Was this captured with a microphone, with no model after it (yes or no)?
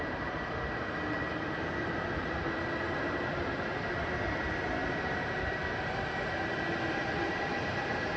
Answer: yes